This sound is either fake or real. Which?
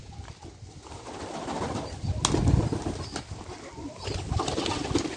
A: real